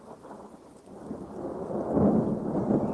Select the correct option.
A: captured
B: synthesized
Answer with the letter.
A